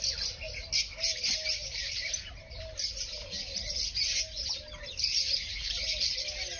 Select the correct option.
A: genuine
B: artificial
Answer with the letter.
A